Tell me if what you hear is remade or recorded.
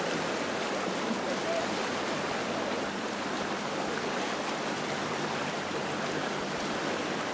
recorded